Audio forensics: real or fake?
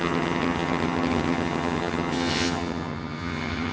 fake